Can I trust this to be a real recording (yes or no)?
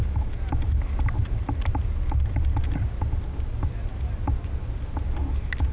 yes